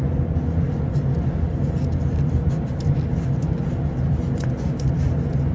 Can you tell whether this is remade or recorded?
recorded